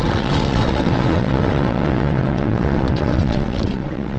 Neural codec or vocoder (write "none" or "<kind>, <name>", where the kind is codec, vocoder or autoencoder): vocoder, WaveNeXt